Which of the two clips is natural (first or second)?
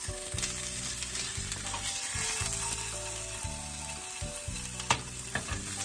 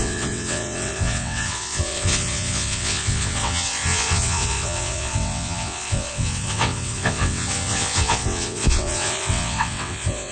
first